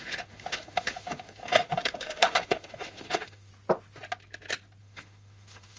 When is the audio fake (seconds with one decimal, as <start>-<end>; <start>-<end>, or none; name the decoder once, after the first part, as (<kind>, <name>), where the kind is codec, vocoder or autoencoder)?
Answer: 0.0-3.5 (autoencoder, DAC-VAE); 4.8-5.8